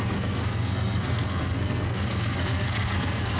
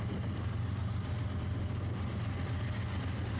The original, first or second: second